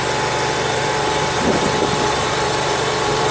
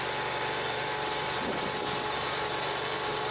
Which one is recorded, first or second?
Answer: second